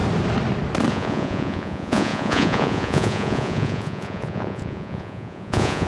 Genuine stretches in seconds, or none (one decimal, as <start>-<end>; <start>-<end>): 0.0-0.9